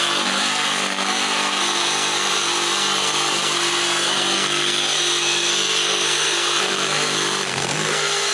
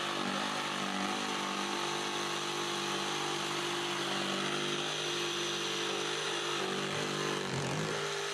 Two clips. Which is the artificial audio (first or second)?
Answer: first